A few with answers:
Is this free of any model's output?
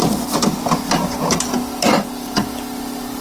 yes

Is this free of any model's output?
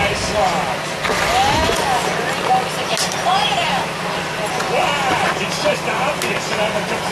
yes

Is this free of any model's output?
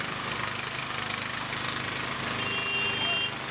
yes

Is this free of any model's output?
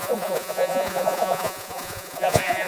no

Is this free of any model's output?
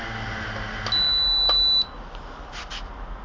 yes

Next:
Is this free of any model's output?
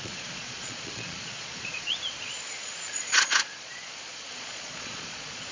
no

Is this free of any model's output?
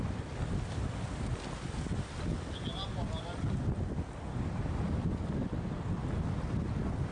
yes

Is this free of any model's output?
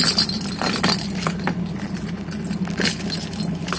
yes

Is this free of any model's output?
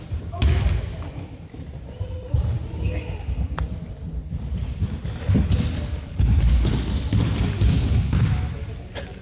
yes